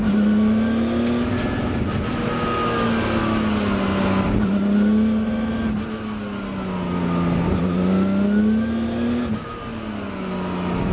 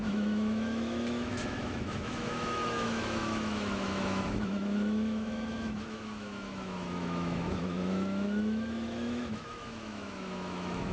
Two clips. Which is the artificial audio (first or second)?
second